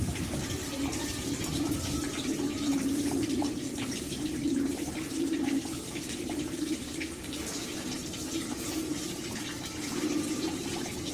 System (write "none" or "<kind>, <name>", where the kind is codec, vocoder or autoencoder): vocoder, BigVGAN v2